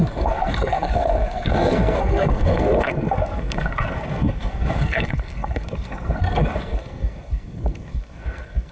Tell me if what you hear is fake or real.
fake